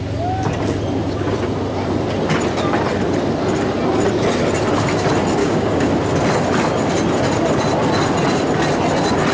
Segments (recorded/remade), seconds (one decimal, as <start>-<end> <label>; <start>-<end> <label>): 0.0-5.4 recorded; 5.4-5.9 remade; 5.9-9.3 recorded

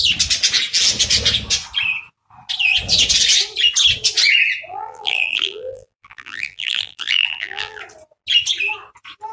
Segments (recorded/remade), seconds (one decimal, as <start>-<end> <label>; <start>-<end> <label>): 0.0-4.7 recorded; 4.7-7.8 remade; 7.8-9.3 recorded

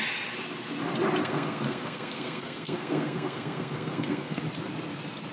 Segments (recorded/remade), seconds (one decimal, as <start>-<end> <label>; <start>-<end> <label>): 0.0-1.2 recorded; 1.2-4.4 remade; 4.4-5.3 recorded

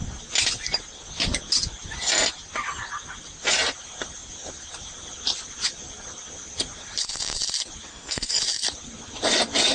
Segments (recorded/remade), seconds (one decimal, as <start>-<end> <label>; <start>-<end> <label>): 0.0-7.9 recorded; 7.9-8.4 remade; 8.4-9.7 recorded